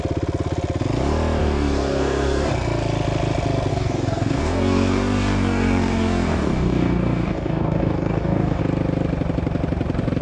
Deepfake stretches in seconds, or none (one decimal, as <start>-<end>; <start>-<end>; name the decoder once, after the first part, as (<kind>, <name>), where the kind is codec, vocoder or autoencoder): 1.4-2.5 (codec, DAC); 3.7-8.6